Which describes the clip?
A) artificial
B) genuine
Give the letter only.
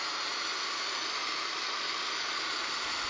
B